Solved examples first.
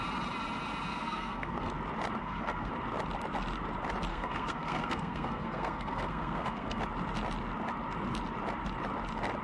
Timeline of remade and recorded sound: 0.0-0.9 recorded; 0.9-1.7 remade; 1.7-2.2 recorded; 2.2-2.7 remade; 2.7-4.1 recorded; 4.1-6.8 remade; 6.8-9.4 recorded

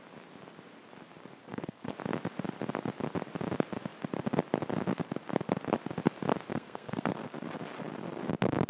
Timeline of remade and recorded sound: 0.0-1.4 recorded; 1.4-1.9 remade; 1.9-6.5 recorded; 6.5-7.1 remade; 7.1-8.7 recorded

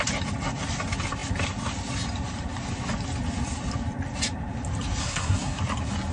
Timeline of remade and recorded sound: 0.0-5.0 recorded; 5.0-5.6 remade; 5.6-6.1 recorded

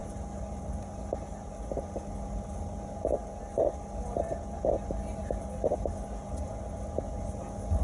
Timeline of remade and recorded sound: 0.0-7.8 recorded

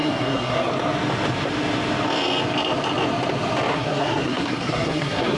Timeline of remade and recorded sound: 0.0-0.7 remade; 0.7-3.7 recorded; 3.7-5.4 remade

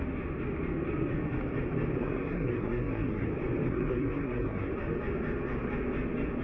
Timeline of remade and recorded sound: 0.0-2.0 recorded; 2.0-3.3 remade; 3.3-3.7 recorded; 3.7-4.7 remade; 4.7-6.4 recorded